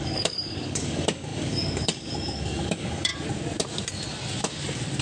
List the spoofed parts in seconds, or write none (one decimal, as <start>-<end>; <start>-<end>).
0.0-3.1